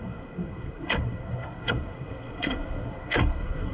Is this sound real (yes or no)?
no